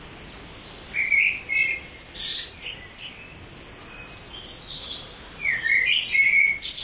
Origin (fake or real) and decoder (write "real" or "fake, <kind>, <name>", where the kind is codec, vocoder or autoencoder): real